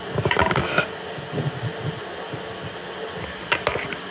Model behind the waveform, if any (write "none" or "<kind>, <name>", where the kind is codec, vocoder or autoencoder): none